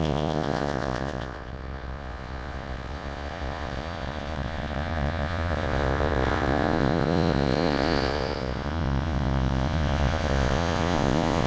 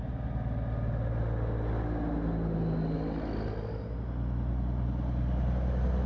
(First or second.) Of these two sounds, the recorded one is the second